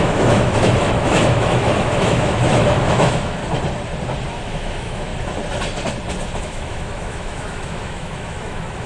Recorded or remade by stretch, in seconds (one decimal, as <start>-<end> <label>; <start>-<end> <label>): 0.0-3.4 remade; 3.4-4.4 recorded; 4.4-5.1 remade; 5.1-6.4 recorded; 6.4-8.9 remade